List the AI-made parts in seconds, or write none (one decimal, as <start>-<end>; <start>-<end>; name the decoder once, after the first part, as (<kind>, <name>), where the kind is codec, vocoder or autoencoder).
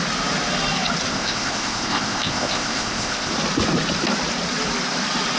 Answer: 1.1-3.3 (codec, ZipCodec)